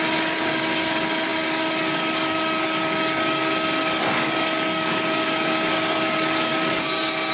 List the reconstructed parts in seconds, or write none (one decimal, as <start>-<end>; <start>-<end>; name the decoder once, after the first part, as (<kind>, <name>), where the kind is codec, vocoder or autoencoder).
0.0-7.3 (codec, DAC)